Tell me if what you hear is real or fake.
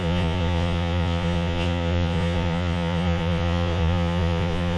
fake